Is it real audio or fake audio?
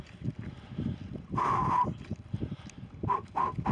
real